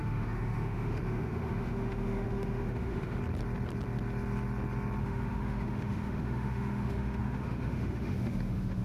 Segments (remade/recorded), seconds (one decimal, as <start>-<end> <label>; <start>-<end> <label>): 0.0-3.2 remade; 3.2-5.0 recorded; 5.0-8.8 remade